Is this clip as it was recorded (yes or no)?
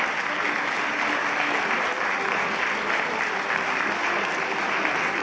yes